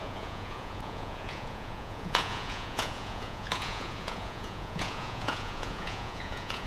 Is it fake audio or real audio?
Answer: fake